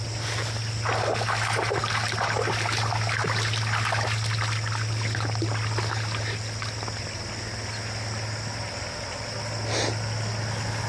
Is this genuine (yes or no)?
yes